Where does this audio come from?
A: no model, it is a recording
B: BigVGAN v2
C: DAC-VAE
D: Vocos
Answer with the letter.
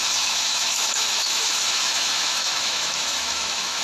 C